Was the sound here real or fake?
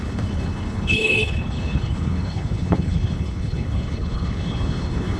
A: fake